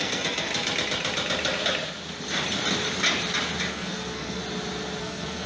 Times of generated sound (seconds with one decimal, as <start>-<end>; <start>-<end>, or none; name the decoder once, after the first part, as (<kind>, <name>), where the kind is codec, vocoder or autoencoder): 0.0-0.5 (codec, SNAC); 3.7-4.4; 5.0-5.5